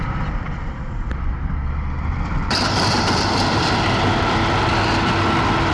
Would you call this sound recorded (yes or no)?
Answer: no